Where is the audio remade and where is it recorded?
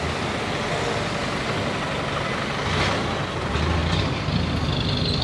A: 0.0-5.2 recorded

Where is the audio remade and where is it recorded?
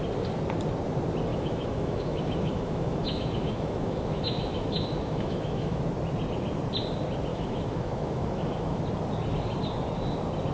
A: 0.0-1.3 recorded; 1.3-5.8 remade; 5.8-7.3 recorded; 7.3-8.8 remade; 8.8-10.5 recorded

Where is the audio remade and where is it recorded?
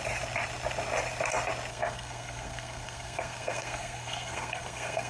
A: 0.0-1.7 recorded; 1.7-5.1 remade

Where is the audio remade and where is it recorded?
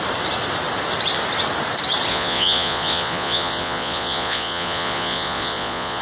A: 0.0-2.1 recorded; 2.1-6.0 remade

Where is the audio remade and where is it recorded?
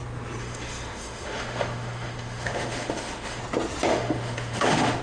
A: 0.0-0.4 recorded; 0.4-3.4 remade; 3.4-3.9 recorded; 3.9-5.0 remade